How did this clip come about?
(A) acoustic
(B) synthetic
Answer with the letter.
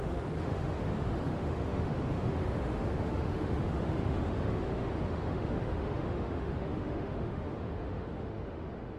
B